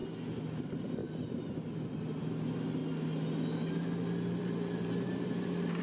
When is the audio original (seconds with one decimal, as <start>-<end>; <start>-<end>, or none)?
0.0-0.6; 1.0-1.9; 2.8-4.4